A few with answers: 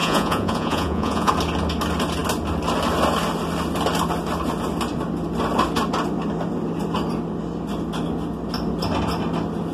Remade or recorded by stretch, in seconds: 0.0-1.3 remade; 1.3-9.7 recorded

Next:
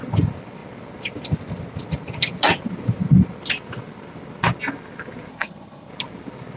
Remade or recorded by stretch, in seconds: 0.0-5.3 recorded; 5.3-5.9 remade; 5.9-6.6 recorded

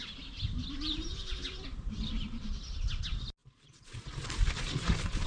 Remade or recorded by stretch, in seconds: 0.0-0.6 recorded; 0.6-2.8 remade; 2.8-3.4 recorded; 3.4-5.3 remade

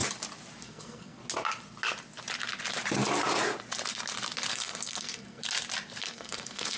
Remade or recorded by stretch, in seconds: 0.0-0.6 recorded; 0.6-1.2 remade; 1.2-4.5 recorded; 4.5-5.4 remade; 5.4-6.0 recorded; 6.0-6.8 remade

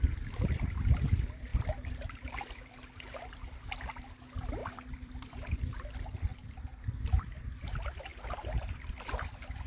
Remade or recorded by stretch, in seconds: 0.0-1.5 recorded; 1.5-3.6 remade; 3.6-4.6 recorded; 4.6-5.7 remade; 5.7-6.3 recorded; 6.3-7.1 remade; 7.1-8.1 recorded; 8.1-8.9 remade; 8.9-9.7 recorded

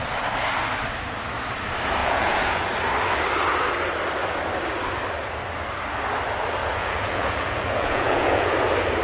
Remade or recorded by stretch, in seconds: 0.0-2.0 recorded; 2.0-2.7 remade; 2.7-6.6 recorded; 6.6-8.5 remade; 8.5-9.0 recorded